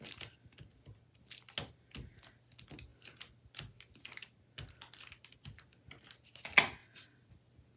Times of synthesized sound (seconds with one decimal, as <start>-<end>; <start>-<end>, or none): 6.8-7.3